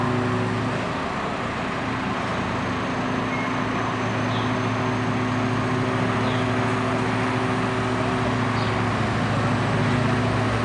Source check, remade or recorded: recorded